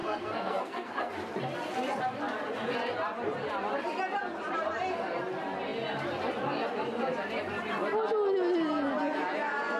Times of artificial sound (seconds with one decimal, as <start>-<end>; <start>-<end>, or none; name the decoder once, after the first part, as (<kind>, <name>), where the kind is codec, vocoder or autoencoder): 0.0-1.1 (codec, SNAC)